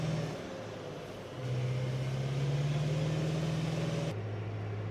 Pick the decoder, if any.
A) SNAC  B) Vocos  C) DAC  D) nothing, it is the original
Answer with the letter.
D